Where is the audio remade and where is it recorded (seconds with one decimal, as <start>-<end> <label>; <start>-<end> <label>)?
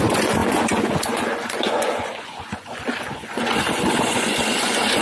0.0-5.0 remade